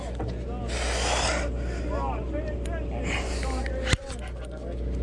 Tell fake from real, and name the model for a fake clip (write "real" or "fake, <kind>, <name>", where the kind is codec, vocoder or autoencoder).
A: real